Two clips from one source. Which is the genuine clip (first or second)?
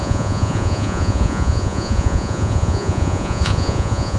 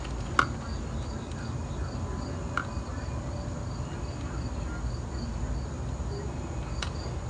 second